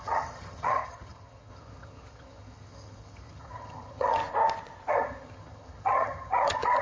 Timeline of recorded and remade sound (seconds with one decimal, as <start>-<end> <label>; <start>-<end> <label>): 0.0-4.2 remade; 4.2-4.9 recorded; 4.9-6.8 remade